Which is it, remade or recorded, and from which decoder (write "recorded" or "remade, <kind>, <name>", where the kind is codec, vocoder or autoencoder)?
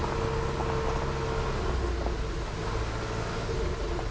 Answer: recorded